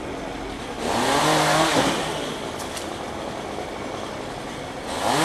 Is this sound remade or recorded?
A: recorded